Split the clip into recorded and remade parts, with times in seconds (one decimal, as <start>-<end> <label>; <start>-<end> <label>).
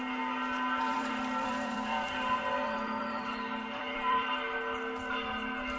0.0-0.8 recorded; 0.8-4.3 remade; 4.3-5.8 recorded